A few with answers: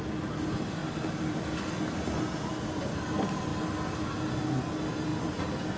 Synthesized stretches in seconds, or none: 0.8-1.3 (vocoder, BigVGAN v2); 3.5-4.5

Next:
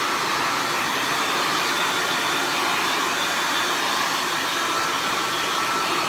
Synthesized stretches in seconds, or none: none

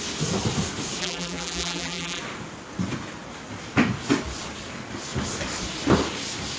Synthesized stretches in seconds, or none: 1.0-2.2 (vocoder, BigVGAN v2)

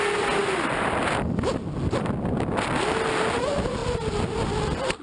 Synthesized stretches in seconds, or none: none

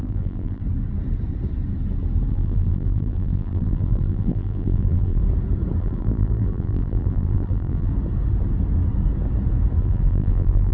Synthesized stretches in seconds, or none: 0.0-0.6 (vocoder, BigVGAN v2); 2.3-5.2; 5.8-7.9; 9.8-10.7